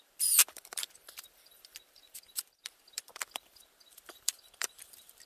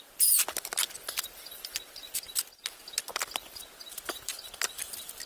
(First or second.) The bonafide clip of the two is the second